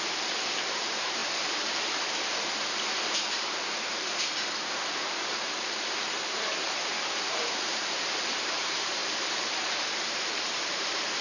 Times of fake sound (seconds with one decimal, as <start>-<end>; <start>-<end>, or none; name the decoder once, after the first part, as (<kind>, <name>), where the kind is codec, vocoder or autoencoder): 0.0-11.2 (vocoder, BigVGAN v2)